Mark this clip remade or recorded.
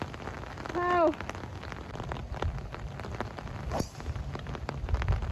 recorded